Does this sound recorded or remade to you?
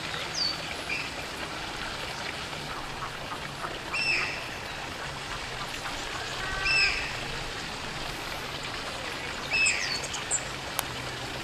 recorded